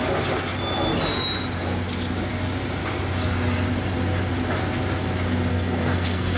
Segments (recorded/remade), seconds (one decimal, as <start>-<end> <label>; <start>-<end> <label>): 0.0-5.5 recorded; 5.5-6.4 remade